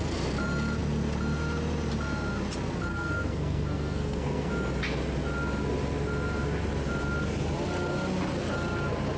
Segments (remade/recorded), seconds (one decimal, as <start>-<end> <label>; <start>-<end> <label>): 0.0-2.9 recorded; 2.9-4.5 remade; 4.5-9.2 recorded